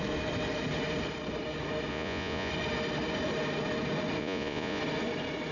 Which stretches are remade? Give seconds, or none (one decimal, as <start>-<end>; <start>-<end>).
1.9-2.5; 4.2-4.8